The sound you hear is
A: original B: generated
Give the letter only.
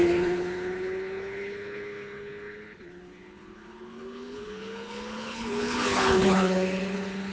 B